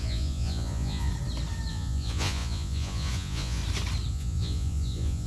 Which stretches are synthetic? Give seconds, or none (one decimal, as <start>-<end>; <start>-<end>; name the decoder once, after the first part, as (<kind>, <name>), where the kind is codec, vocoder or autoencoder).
0.0-1.1 (vocoder, Vocos); 1.7-3.6; 4.1-5.3